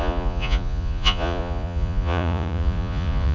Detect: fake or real fake